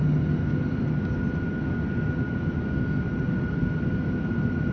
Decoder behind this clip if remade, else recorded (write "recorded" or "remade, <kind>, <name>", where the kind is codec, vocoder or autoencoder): recorded